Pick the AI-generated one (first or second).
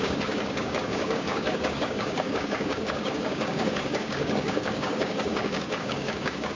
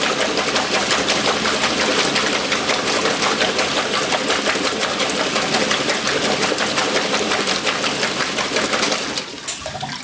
first